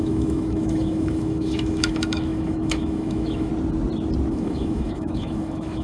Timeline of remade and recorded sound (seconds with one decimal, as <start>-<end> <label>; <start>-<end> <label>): 0.0-3.5 remade; 3.5-4.3 recorded; 4.3-5.8 remade